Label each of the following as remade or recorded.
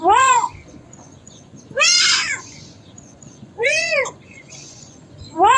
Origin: remade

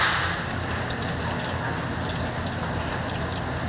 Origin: recorded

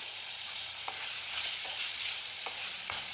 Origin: remade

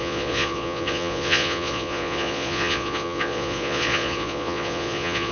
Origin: remade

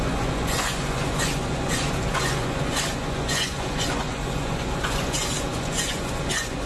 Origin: remade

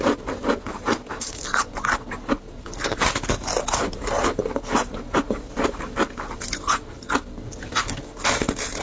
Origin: recorded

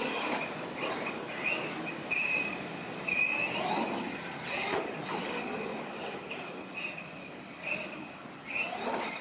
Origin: recorded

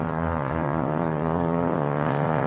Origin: remade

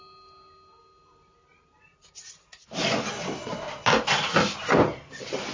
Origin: recorded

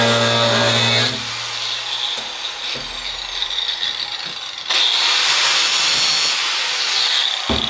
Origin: recorded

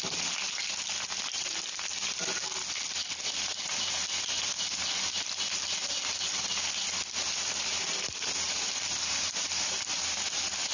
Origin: recorded